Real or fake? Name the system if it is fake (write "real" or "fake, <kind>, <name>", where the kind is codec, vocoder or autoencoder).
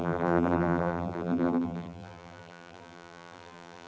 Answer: fake, vocoder, BigVGAN v2